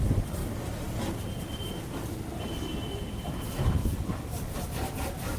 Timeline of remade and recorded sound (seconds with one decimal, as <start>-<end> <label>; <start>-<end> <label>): 0.0-0.4 remade; 0.4-3.3 recorded; 3.3-5.4 remade